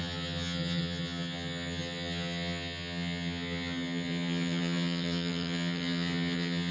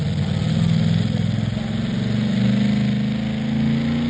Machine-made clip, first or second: first